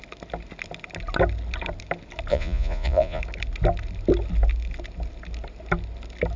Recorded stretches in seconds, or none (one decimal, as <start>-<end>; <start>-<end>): 0.0-2.3; 3.2-6.4